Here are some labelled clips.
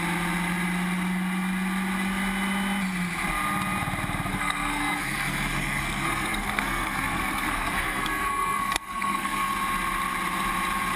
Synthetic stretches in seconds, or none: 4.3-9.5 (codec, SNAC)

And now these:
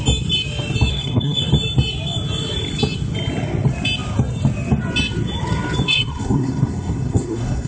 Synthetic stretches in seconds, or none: 0.9-1.5 (codec, SNAC); 5.9-7.7

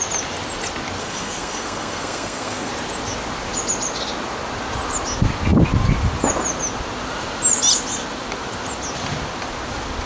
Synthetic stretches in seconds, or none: 1.0-2.7 (codec, SNAC)

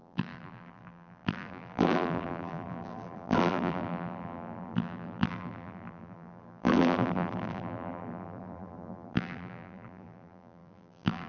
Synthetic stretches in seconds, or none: 0.0-11.3 (vocoder, BigVGAN v2)

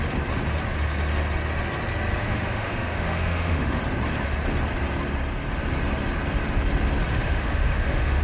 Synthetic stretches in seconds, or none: 2.2-3.8 (autoencoder, DAC-VAE); 7.1-8.2